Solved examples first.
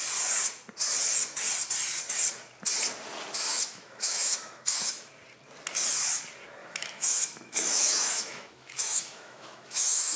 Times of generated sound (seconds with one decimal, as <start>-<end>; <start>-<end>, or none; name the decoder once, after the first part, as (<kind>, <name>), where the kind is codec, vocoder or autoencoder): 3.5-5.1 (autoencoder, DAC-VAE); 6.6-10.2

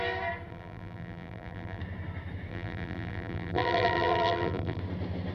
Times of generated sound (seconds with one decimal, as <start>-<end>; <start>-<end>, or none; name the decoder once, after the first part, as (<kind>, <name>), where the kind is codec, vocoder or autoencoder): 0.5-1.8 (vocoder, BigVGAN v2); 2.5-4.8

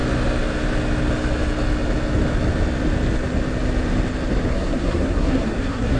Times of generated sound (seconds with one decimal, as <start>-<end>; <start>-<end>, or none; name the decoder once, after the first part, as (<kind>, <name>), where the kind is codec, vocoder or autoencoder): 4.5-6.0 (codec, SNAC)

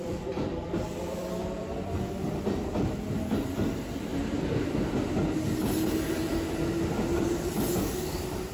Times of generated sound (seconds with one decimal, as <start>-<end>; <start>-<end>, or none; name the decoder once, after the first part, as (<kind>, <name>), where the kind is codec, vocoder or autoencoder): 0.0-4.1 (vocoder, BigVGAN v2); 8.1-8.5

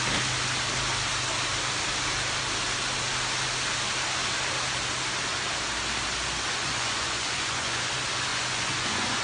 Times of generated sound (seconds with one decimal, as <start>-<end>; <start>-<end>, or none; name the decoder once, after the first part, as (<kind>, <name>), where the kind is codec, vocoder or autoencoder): 6.5-7.9 (vocoder, Vocos); 8.3-9.2

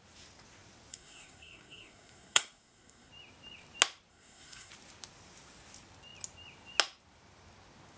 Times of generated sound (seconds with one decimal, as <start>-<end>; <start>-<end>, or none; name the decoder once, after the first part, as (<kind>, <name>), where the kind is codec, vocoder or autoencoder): 0.9-3.1 (codec, SNAC); 4.1-4.7

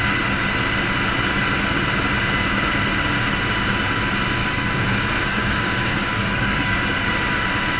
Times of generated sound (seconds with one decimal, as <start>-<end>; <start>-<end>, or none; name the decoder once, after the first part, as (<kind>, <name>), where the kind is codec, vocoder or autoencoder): 4.4-7.1 (codec, DAC)

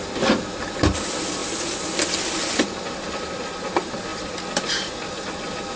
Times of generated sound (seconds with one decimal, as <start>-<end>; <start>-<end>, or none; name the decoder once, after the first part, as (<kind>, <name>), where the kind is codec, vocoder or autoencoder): 4.1-4.7 (vocoder, BigVGAN v2)